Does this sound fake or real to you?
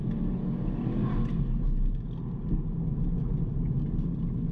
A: real